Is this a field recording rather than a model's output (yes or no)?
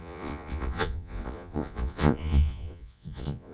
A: no